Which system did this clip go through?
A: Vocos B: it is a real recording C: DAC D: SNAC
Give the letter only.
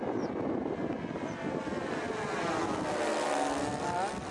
B